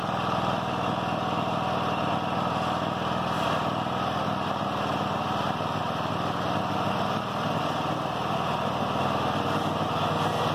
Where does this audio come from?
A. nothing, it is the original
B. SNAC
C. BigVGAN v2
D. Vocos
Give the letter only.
A